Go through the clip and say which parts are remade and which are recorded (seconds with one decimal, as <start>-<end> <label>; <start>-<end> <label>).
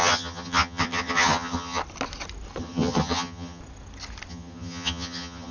0.0-1.8 remade; 1.8-2.6 recorded; 2.6-3.6 remade; 3.6-4.3 recorded; 4.3-5.5 remade